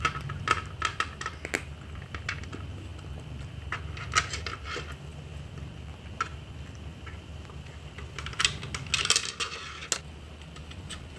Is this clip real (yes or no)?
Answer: yes